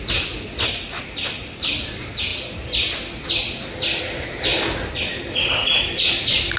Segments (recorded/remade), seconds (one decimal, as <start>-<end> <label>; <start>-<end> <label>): 0.0-6.6 recorded